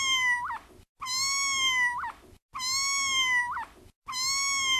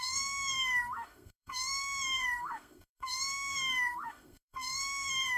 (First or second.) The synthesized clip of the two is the second